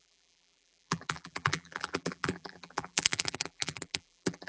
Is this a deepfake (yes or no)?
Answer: yes